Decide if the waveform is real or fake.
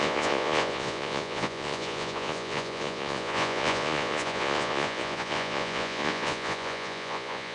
fake